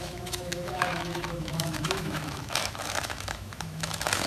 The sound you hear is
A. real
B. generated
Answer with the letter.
B